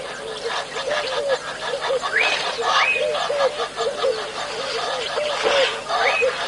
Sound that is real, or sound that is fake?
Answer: real